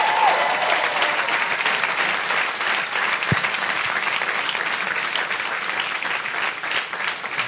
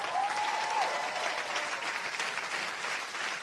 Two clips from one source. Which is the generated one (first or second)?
first